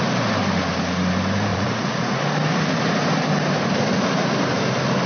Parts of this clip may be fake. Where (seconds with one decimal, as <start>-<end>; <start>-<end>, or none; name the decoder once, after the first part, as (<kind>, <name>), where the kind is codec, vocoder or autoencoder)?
1.5-2.2 (vocoder, Vocos)